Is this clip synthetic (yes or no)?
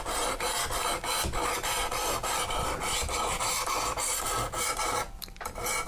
no